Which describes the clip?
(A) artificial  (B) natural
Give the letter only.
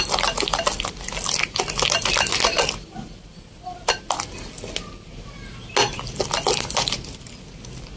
B